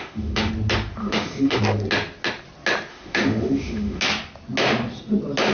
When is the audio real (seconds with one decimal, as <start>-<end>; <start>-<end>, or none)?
0.5-1.0; 1.6-2.9; 4.0-5.5